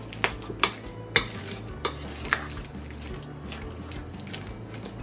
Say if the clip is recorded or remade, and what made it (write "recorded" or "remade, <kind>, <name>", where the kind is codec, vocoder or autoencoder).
recorded